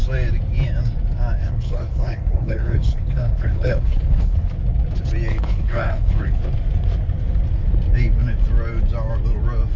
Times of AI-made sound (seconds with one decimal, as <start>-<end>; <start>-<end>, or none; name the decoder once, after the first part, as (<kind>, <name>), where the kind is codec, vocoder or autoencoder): 1.4-4.4 (codec, HILCodec); 5.3-6.4